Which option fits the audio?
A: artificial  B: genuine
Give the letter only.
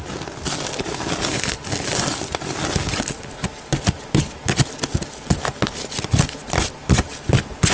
B